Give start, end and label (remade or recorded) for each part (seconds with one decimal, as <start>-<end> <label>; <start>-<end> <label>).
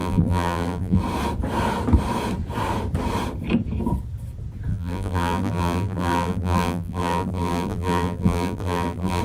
0.0-1.0 remade; 1.0-4.7 recorded; 4.7-9.2 remade